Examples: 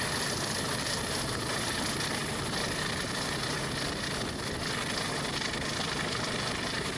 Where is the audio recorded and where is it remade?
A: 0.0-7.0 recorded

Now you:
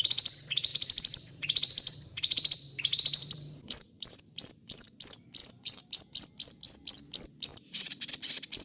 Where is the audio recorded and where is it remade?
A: 0.0-0.7 recorded; 0.7-5.0 remade; 5.0-5.4 recorded; 5.4-6.0 remade; 6.0-7.5 recorded; 7.5-8.1 remade; 8.1-8.6 recorded